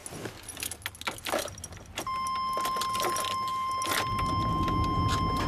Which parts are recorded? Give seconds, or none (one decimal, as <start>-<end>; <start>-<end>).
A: 0.0-5.5